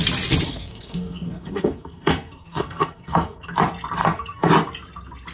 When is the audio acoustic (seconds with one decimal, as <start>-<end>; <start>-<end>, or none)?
0.0-0.5; 3.5-4.0; 4.5-5.3